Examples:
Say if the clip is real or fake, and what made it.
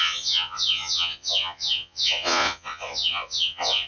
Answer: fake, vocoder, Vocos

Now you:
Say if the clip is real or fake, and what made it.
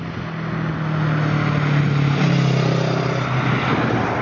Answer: real